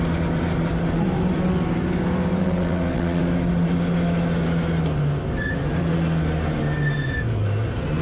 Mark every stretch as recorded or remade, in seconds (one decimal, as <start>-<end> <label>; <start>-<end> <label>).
0.0-2.4 recorded; 2.4-3.2 remade; 3.2-8.0 recorded